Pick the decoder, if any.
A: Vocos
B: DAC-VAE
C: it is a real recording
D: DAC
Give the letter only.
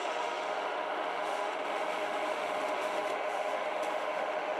B